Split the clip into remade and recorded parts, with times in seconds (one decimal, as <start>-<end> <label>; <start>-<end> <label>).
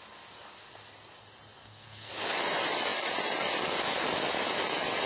0.0-1.6 recorded; 1.6-2.1 remade; 2.1-5.1 recorded